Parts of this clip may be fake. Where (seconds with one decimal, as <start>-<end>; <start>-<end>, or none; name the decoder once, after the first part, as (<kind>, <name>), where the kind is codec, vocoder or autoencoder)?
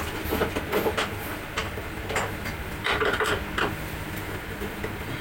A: none